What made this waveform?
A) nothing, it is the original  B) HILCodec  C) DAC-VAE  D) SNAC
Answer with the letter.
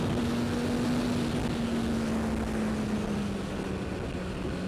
A